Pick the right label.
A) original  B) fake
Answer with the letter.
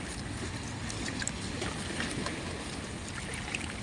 A